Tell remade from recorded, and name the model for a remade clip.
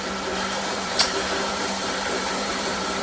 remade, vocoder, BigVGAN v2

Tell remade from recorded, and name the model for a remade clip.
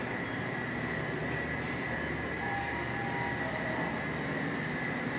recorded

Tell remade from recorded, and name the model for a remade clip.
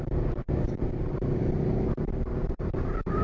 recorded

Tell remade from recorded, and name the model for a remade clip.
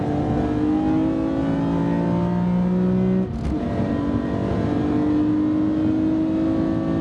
recorded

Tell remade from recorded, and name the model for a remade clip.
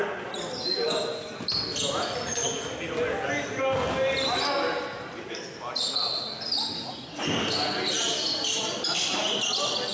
recorded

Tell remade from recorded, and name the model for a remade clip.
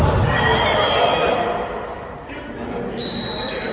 recorded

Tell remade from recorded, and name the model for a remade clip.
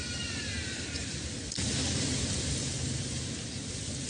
remade, vocoder, BigVGAN v2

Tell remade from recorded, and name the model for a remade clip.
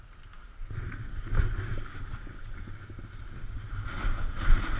recorded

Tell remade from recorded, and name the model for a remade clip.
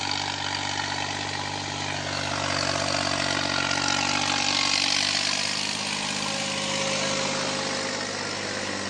recorded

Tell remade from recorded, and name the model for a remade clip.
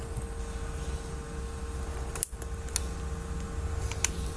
recorded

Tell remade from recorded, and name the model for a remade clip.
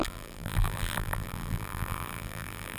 remade, vocoder, BigVGAN v2